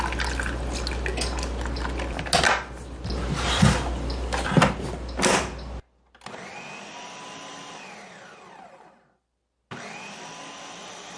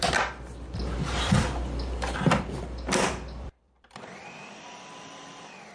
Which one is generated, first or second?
second